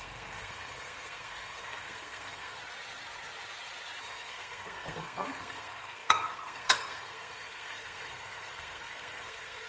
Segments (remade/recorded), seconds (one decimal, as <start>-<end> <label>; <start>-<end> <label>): 0.0-2.6 remade; 2.6-4.0 recorded; 4.0-9.7 remade